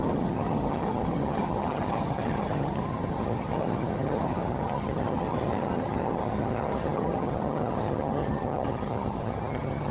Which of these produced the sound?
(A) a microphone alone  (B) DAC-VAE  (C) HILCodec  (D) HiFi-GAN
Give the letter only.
D